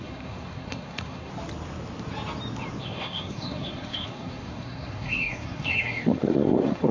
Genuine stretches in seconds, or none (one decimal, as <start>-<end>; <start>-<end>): 1.3-2.8